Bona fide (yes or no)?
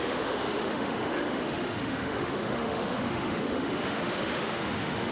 no